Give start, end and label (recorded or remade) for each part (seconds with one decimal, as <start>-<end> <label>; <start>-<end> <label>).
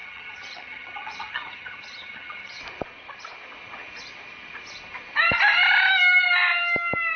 0.0-2.6 remade; 2.6-7.2 recorded